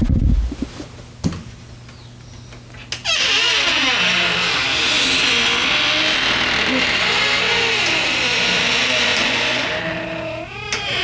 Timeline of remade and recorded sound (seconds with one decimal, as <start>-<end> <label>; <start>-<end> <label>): 0.0-9.1 recorded; 9.1-9.7 remade; 9.7-11.0 recorded